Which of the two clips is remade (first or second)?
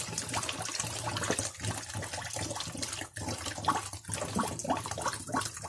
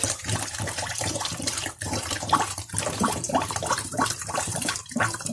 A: second